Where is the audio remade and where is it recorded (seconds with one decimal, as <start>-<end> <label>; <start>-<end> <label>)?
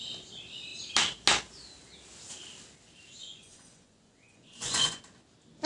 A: 0.0-3.2 recorded; 3.2-5.0 remade; 5.0-5.7 recorded